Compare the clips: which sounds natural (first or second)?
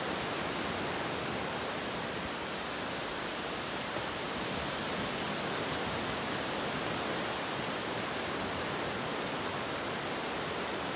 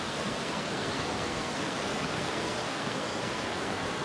first